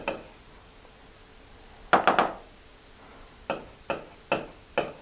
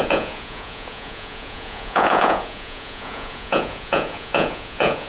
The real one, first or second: first